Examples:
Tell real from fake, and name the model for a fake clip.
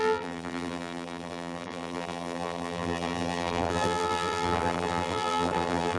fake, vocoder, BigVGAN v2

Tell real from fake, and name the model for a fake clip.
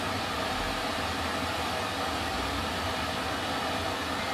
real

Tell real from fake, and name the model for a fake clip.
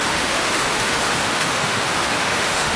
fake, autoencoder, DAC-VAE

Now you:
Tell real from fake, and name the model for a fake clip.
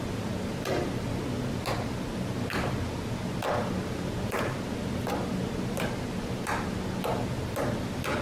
real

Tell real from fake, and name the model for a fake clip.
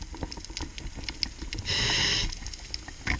real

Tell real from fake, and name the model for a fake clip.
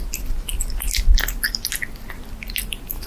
real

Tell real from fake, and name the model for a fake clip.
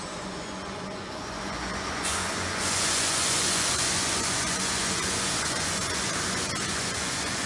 fake, vocoder, Vocos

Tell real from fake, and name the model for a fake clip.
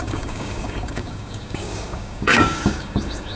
fake, codec, DAC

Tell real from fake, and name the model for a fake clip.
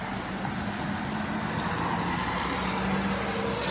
real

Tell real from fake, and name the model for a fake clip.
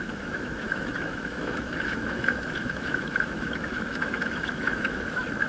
fake, autoencoder, DAC-VAE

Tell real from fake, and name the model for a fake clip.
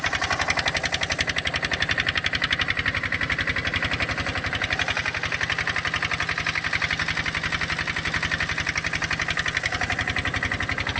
real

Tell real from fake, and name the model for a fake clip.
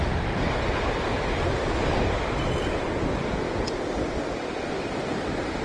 real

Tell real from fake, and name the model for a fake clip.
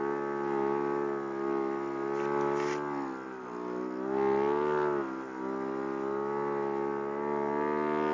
real